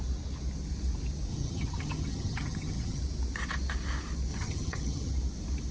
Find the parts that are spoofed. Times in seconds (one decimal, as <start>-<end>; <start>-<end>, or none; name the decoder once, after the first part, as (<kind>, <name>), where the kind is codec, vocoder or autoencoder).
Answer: 1.3-3.0 (vocoder, HiFi-GAN); 4.3-5.1